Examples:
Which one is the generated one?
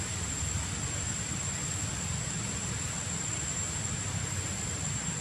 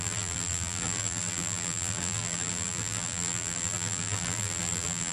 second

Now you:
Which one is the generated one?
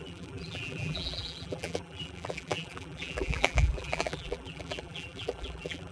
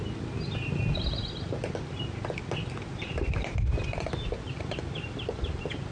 first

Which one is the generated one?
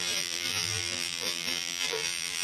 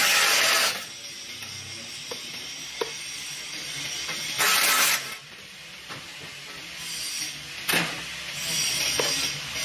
first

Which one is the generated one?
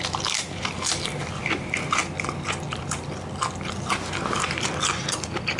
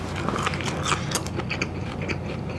first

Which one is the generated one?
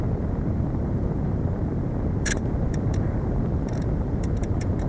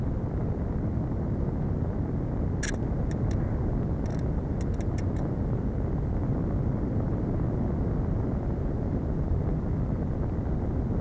first